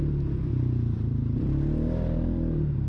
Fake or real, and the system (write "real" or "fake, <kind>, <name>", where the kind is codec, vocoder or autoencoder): fake, vocoder, BigVGAN v2